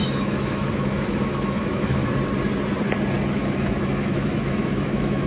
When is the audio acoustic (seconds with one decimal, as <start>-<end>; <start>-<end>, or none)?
2.0-3.3